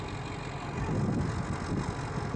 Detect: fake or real real